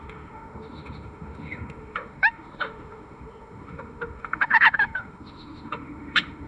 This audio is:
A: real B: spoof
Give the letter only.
B